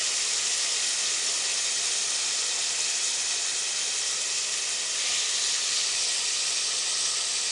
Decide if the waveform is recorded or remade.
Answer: recorded